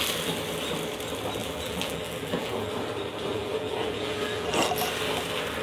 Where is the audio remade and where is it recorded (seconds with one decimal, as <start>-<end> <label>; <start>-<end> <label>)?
0.0-1.4 recorded; 1.4-2.7 remade; 2.7-3.3 recorded; 3.3-4.7 remade; 4.7-5.6 recorded